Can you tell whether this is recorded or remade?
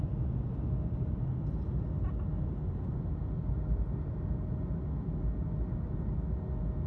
recorded